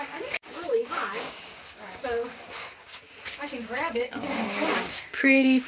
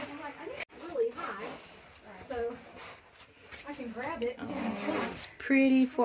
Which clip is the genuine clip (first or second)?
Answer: second